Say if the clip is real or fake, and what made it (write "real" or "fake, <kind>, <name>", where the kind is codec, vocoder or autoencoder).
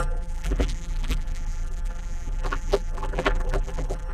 fake, vocoder, BigVGAN v2